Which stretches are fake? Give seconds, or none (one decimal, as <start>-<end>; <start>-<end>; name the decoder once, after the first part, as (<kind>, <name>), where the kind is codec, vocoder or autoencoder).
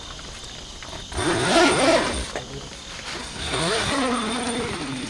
3.2-3.9 (codec, SNAC)